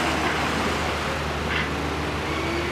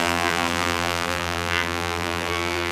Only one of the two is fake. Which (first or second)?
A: second